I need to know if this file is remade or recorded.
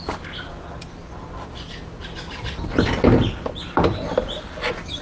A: recorded